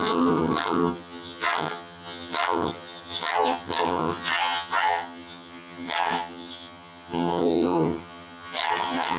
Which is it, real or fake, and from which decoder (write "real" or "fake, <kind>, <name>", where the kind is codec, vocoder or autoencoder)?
fake, vocoder, HiFi-GAN